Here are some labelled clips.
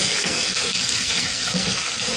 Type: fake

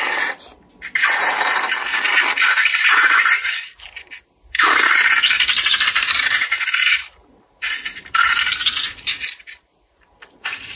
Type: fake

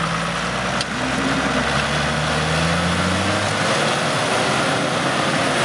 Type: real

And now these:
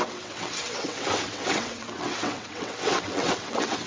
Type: fake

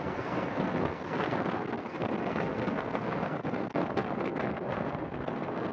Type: fake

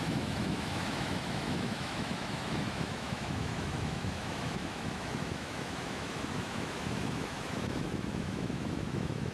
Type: fake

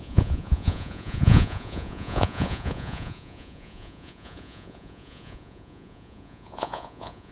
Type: fake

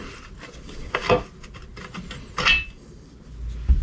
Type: real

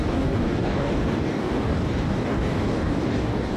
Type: fake